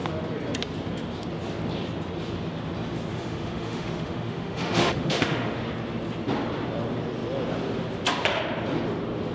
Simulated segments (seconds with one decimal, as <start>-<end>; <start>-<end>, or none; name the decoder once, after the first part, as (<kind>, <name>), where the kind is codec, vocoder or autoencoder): 3.1-5.6 (autoencoder, DAC-VAE)